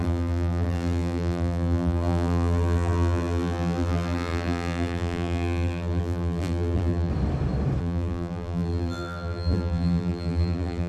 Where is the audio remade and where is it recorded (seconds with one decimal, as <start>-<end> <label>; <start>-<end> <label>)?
0.0-7.1 remade; 7.1-7.8 recorded; 7.8-10.9 remade